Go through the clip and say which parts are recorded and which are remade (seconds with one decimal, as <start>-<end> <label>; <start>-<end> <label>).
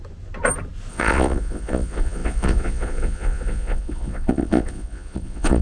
0.0-0.9 recorded; 0.9-5.6 remade